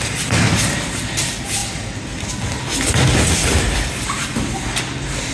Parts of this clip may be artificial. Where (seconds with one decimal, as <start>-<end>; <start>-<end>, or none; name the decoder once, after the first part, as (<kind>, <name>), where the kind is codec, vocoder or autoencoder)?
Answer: none